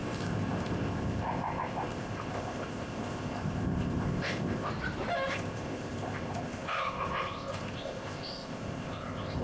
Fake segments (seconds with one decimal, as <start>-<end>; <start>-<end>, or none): 0.0-4.7; 5.3-9.4